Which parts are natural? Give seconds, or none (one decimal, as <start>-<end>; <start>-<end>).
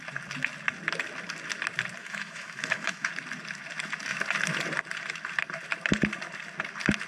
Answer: 0.0-2.0; 3.1-7.1